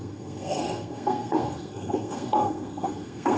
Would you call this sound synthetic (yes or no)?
yes